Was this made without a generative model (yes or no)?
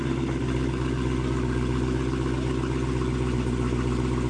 yes